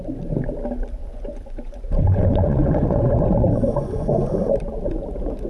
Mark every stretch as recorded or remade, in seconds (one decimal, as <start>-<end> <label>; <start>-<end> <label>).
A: 0.0-1.0 recorded; 1.0-4.3 remade; 4.3-5.5 recorded